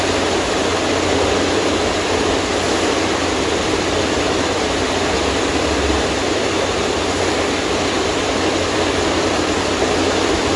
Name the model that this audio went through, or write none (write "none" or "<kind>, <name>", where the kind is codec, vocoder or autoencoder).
vocoder, BigVGAN v2